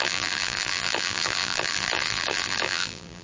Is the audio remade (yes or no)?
yes